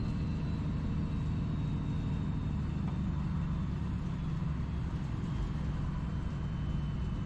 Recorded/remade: recorded